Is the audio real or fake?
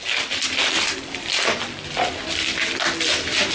real